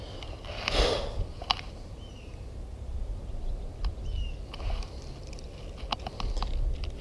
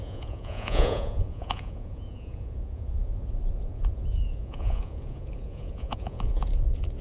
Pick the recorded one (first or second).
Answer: first